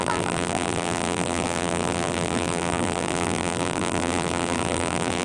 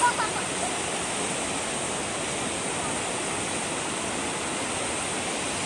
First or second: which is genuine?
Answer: second